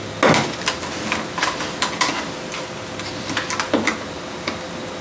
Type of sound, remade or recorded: recorded